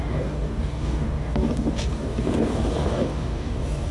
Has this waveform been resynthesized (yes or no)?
yes